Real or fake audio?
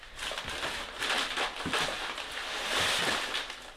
fake